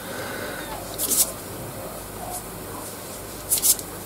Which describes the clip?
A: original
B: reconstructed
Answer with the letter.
A